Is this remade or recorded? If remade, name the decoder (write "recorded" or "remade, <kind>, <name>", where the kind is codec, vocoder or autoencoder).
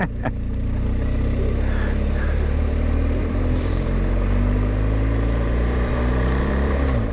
remade, vocoder, BigVGAN v2